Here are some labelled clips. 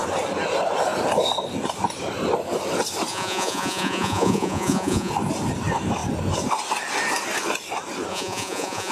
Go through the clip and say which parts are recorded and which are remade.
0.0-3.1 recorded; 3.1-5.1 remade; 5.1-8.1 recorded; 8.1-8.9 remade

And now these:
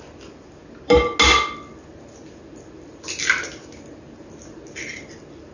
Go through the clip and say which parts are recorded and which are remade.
0.0-5.5 recorded

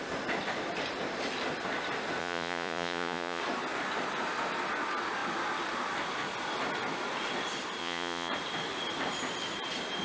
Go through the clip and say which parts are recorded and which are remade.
0.0-2.2 recorded; 2.2-3.4 remade; 3.4-7.8 recorded; 7.8-8.3 remade; 8.3-10.0 recorded

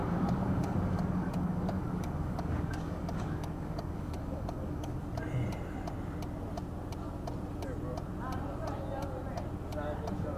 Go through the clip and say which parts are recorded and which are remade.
0.0-5.0 remade; 5.0-10.4 recorded

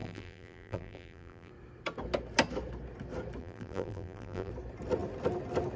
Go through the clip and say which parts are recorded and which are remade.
0.0-1.5 remade; 1.5-3.4 recorded; 3.4-4.5 remade; 4.5-5.8 recorded

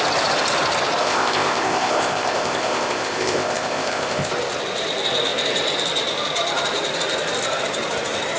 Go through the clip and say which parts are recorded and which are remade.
0.0-1.0 recorded; 1.0-4.3 remade; 4.3-8.4 recorded

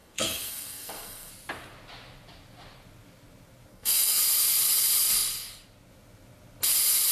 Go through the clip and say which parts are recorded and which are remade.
0.0-1.3 remade; 1.3-3.7 recorded; 3.7-4.2 remade; 4.2-7.1 recorded

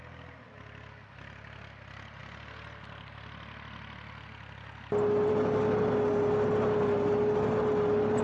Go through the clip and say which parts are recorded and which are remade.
0.0-8.2 recorded